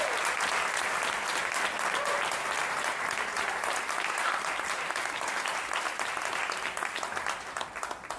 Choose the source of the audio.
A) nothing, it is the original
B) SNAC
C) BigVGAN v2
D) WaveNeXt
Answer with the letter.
A